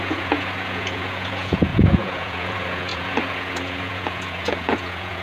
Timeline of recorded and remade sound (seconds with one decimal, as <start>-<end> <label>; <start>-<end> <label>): 0.0-5.2 remade